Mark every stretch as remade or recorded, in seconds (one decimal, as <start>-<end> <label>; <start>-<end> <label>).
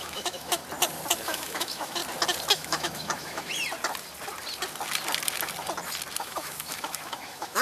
0.0-0.6 remade; 0.6-1.2 recorded; 1.2-2.0 remade; 2.0-2.5 recorded; 2.5-3.5 remade; 3.5-6.2 recorded; 6.2-7.6 remade